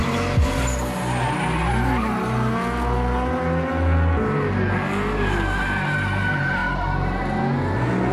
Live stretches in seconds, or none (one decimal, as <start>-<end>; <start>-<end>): 0.0-8.1